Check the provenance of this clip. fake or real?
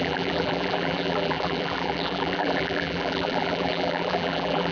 fake